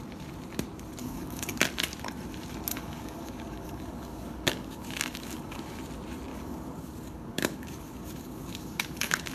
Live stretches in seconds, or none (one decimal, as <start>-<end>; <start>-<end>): 0.0-1.0; 1.6-2.7; 5.8-6.3